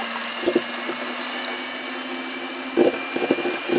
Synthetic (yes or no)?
no